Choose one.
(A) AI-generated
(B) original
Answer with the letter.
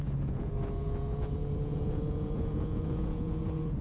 A